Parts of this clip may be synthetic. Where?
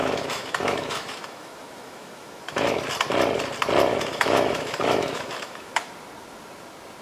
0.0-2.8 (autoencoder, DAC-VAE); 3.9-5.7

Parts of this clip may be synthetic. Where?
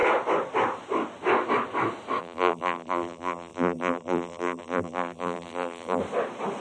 2.2-6.0 (vocoder, BigVGAN v2)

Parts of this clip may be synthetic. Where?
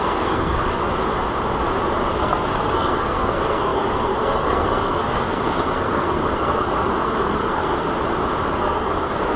0.0-0.8 (codec, SNAC); 2.1-7.9; 8.5-9.4